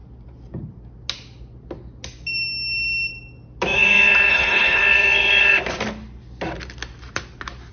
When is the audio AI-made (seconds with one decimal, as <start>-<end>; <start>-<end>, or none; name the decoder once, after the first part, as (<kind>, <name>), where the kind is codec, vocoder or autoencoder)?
4.3-4.8 (codec, HILCodec)